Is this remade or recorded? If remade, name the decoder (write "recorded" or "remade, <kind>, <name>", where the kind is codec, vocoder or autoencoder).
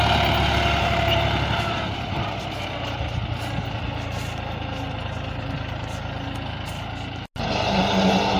recorded